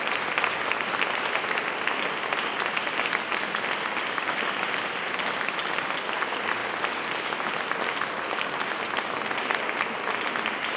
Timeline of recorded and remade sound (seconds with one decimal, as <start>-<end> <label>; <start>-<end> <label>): 0.0-10.8 recorded